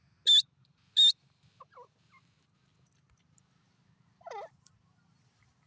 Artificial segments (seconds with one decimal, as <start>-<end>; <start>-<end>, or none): none